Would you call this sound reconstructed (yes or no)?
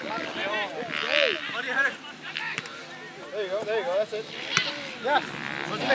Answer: no